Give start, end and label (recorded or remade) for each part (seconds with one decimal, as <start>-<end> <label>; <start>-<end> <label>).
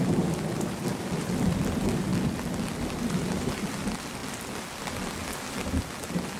0.0-0.9 recorded; 0.9-1.6 remade; 1.6-6.4 recorded